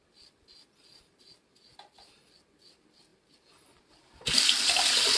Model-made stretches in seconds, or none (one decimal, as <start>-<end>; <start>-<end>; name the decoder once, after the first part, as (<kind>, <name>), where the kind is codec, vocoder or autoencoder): none